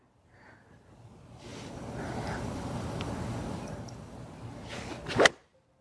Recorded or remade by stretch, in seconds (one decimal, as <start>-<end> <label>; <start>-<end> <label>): 0.0-1.5 recorded; 1.5-4.2 remade; 4.2-5.8 recorded